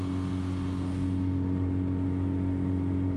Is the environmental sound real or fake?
real